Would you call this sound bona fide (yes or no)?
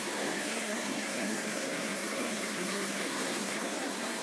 no